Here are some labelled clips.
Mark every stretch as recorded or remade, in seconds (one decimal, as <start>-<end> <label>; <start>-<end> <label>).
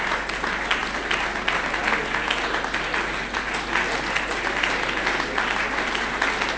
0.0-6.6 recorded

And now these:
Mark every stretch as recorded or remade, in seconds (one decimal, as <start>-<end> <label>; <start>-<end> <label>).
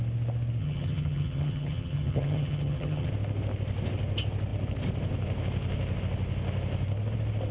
0.0-0.6 recorded; 0.6-3.1 remade; 3.1-7.5 recorded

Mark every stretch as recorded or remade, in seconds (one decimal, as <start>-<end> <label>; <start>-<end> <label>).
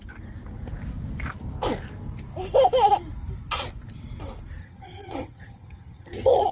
0.0-4.6 recorded; 4.6-6.5 remade